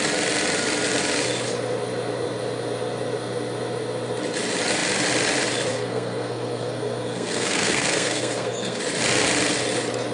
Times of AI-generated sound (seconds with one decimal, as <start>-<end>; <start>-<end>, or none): 5.7-8.8

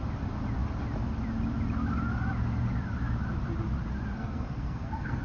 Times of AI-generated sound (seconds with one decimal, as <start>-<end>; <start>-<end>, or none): 4.2-5.2

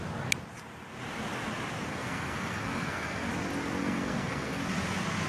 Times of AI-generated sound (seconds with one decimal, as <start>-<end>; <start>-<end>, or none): 1.9-3.3; 3.8-4.6

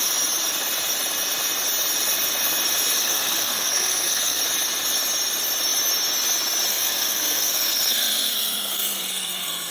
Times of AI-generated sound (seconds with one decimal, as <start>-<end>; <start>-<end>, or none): 3.0-4.4; 6.7-9.7

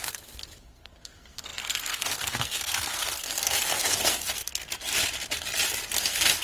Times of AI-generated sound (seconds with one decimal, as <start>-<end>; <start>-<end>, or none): 0.0-4.9; 6.0-6.4

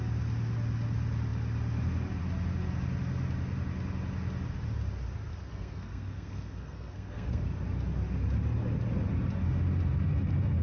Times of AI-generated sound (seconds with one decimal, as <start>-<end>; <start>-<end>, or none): 5.3-7.4

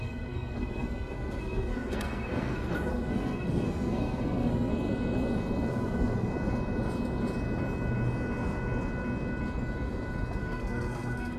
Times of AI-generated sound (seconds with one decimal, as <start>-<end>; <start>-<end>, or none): 0.0-4.7; 5.7-6.3; 10.4-11.4